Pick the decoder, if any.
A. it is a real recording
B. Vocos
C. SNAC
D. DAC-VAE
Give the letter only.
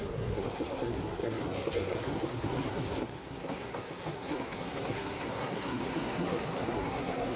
C